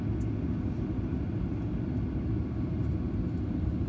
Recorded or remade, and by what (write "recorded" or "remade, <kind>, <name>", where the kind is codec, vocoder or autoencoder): recorded